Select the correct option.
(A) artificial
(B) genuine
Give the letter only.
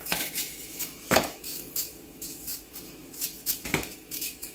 A